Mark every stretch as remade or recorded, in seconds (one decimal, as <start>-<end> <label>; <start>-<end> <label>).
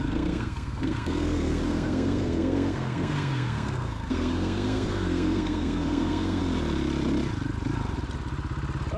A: 0.0-6.4 remade; 6.4-9.0 recorded